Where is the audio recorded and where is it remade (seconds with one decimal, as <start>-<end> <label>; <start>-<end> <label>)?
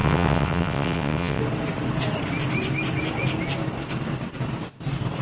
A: 0.0-1.4 remade; 1.4-5.2 recorded